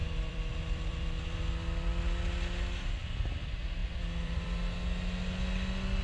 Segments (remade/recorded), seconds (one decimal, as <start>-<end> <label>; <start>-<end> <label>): 0.0-1.4 remade; 1.4-3.8 recorded; 3.8-4.6 remade; 4.6-6.0 recorded